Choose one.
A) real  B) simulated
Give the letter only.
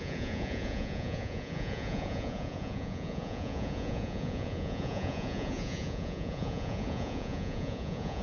B